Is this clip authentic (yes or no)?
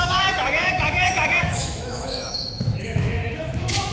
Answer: no